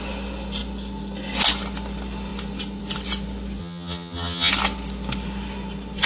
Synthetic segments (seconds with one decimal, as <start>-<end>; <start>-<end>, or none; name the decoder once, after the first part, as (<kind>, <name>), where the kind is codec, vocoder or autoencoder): 3.6-4.5 (vocoder, HiFi-GAN)